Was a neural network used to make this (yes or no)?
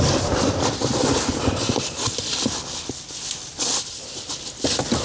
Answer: no